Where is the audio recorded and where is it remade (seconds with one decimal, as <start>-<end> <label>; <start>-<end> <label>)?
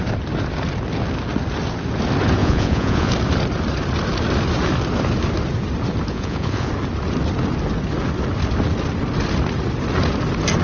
0.0-2.4 recorded; 2.4-3.1 remade; 3.1-6.1 recorded; 6.1-6.7 remade; 6.7-10.6 recorded